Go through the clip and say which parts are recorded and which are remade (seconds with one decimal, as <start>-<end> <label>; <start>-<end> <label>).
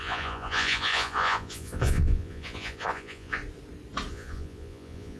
0.0-3.4 remade; 3.4-4.1 recorded; 4.1-5.2 remade